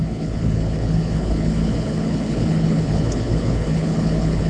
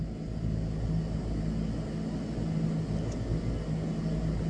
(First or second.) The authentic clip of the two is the second